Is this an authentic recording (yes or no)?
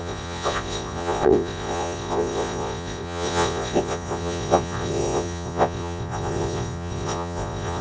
no